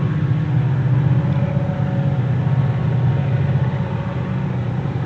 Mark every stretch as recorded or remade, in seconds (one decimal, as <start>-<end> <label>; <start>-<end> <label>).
0.0-5.1 recorded